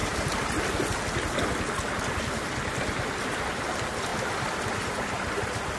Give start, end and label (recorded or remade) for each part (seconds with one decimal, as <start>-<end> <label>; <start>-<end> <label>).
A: 0.0-5.8 recorded